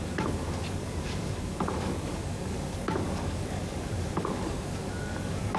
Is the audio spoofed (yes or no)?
yes